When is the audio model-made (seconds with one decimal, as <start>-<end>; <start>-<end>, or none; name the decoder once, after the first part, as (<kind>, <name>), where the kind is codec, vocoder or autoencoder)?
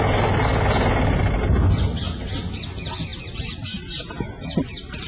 3.1-4.1 (vocoder, BigVGAN v2)